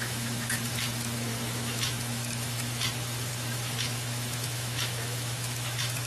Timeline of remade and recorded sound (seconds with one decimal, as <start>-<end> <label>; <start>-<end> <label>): 0.0-6.1 remade